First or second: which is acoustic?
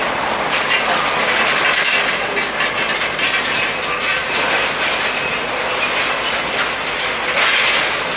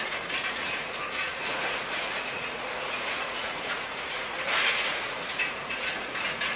first